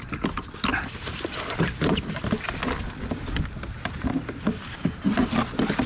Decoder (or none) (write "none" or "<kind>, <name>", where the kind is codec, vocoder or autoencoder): none